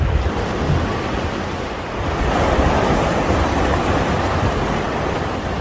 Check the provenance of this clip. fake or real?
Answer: real